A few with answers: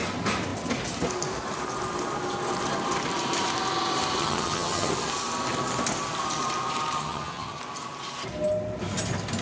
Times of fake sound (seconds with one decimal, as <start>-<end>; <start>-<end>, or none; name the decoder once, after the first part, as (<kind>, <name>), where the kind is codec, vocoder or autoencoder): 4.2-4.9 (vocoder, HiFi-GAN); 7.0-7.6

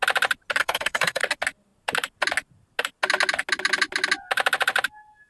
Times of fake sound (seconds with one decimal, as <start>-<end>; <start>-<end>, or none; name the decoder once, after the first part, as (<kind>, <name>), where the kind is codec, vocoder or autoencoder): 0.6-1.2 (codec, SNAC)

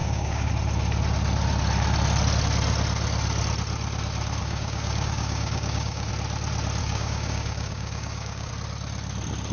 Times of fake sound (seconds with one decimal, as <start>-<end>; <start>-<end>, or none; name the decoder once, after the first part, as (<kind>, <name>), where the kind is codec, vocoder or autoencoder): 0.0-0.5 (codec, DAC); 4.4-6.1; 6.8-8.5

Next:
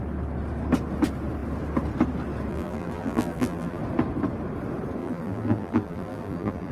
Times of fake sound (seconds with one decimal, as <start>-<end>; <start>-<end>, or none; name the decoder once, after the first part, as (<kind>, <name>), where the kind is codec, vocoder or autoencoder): 2.5-3.8 (vocoder, BigVGAN v2); 5.0-6.7

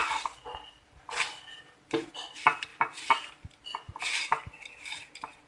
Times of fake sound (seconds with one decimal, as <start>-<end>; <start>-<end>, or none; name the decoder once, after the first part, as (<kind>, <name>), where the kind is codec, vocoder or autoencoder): none

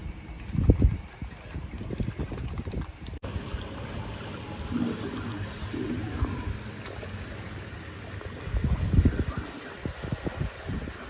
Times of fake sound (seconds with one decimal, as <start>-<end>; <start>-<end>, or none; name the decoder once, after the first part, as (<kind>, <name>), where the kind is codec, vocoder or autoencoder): none